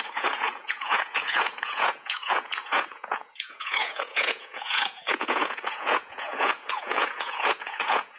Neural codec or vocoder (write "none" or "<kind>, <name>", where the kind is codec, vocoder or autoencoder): vocoder, Vocos